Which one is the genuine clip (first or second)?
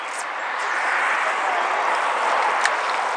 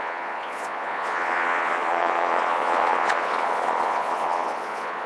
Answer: first